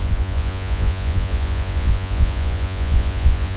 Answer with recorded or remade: remade